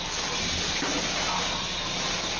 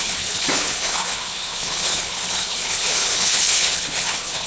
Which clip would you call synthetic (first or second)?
second